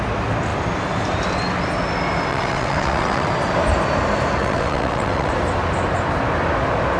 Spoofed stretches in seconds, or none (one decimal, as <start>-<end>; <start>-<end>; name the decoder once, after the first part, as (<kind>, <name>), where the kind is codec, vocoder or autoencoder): 2.3-3.3 (vocoder, WaveNeXt); 4.4-5.3